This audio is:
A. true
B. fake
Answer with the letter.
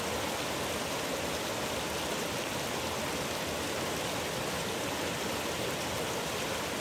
A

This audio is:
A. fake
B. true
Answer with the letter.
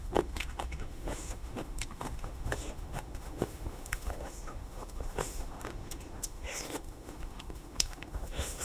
A